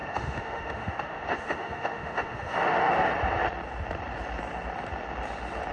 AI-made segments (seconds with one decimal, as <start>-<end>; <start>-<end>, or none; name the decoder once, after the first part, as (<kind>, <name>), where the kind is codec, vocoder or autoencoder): 0.0-2.9 (autoencoder, DAC-VAE)